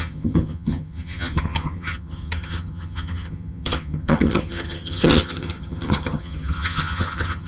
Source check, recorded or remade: remade